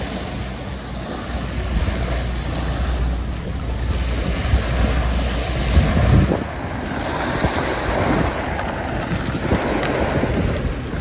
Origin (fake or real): real